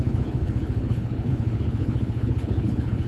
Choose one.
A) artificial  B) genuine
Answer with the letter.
A